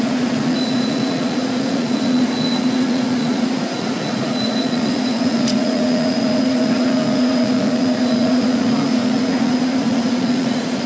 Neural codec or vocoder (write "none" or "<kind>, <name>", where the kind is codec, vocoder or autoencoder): vocoder, Vocos